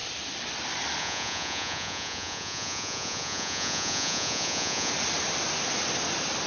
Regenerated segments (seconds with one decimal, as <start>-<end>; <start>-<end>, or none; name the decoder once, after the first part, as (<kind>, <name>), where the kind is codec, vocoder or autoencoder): 1.0-4.9 (vocoder, Vocos)